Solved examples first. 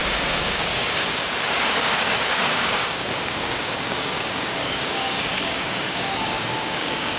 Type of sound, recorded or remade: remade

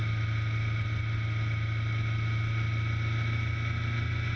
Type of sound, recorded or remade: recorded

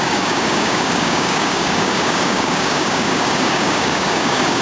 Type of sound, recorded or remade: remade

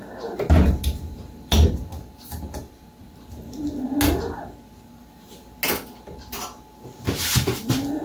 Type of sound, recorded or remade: recorded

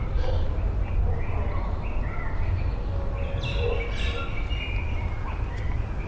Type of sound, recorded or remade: recorded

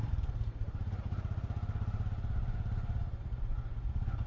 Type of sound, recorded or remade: recorded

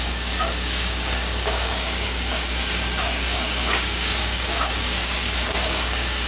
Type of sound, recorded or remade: remade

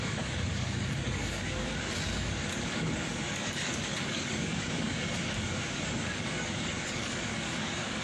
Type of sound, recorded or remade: remade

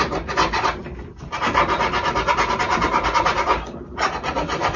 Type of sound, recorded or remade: recorded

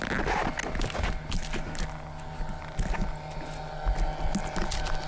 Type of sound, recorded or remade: recorded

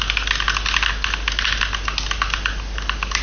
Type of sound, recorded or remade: recorded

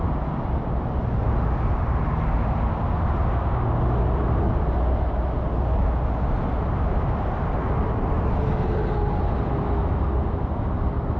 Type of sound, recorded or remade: recorded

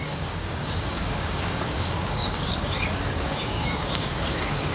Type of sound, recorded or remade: remade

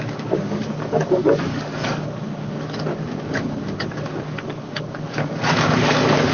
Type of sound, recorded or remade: remade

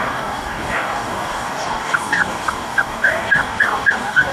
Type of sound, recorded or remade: remade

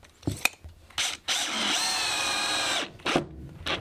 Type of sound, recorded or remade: recorded